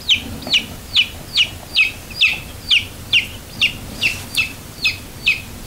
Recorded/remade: remade